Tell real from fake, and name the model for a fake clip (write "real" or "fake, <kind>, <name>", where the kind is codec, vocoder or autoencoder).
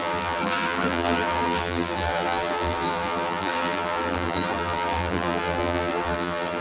fake, vocoder, BigVGAN v2